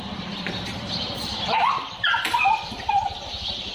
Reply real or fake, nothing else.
fake